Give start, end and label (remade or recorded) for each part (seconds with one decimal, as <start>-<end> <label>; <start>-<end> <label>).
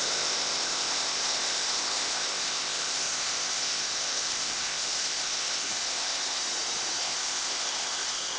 0.0-6.4 remade; 6.4-7.0 recorded; 7.0-8.4 remade